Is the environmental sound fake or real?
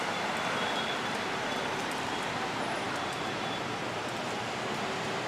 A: real